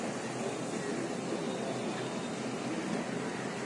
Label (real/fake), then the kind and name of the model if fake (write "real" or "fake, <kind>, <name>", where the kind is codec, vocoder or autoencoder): real